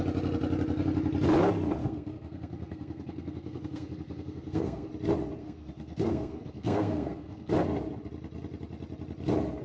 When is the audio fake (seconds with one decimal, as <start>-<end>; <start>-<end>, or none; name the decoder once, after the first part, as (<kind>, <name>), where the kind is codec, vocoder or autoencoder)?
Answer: 1.8-4.9 (codec, SNAC); 5.4-7.5